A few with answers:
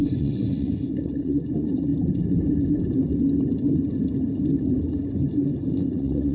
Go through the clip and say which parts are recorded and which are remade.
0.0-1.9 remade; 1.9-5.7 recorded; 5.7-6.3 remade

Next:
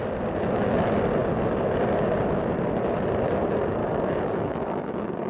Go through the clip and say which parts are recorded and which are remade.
0.0-3.8 recorded; 3.8-5.3 remade

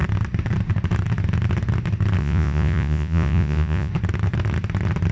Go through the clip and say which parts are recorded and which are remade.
0.0-2.2 recorded; 2.2-3.9 remade; 3.9-5.1 recorded